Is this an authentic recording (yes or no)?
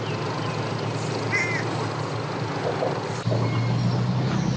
yes